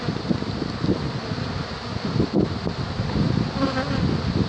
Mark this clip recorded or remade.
recorded